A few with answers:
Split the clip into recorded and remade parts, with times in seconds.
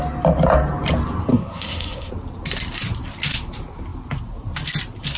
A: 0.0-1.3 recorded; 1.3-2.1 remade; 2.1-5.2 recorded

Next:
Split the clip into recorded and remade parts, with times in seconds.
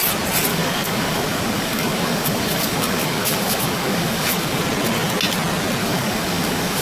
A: 0.0-0.5 recorded; 0.5-4.6 remade; 4.6-5.8 recorded; 5.8-6.8 remade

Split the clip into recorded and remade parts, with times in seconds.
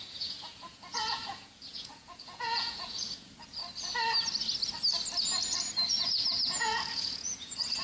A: 0.0-3.6 remade; 3.6-5.9 recorded; 5.9-7.8 remade